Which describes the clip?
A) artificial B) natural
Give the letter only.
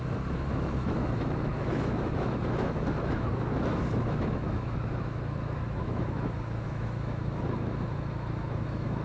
A